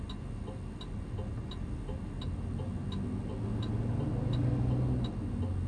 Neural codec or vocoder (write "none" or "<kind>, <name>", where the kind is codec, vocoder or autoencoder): none